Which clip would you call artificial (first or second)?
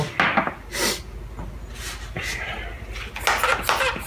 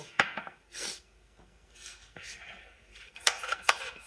second